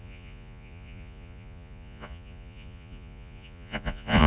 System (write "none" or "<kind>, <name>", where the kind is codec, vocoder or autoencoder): vocoder, Vocos